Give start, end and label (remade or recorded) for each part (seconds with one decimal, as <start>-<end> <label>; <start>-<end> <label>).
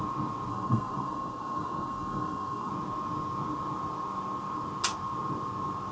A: 0.0-0.5 recorded; 0.5-2.7 remade; 2.7-5.9 recorded